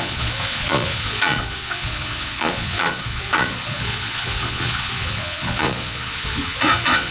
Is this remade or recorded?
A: remade